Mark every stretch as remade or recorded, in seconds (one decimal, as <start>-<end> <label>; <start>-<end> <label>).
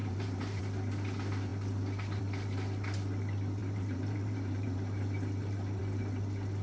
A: 0.0-0.6 remade; 0.6-3.6 recorded; 3.6-5.8 remade; 5.8-6.6 recorded